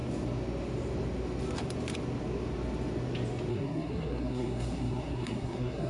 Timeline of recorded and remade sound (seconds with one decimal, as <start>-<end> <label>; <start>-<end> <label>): 0.0-3.5 recorded; 3.5-5.9 remade